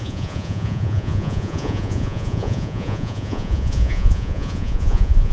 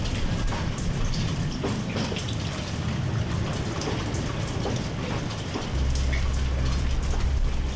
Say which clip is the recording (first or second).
second